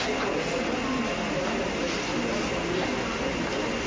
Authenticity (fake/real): real